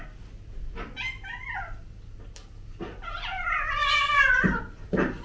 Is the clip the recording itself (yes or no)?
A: yes